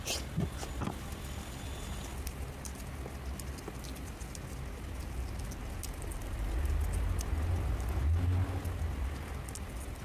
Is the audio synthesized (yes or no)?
no